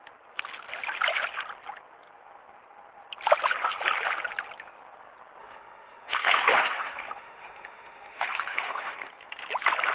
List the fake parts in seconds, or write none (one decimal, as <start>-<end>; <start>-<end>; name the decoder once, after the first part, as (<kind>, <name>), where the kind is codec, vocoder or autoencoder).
5.4-9.1 (autoencoder, DAC-VAE)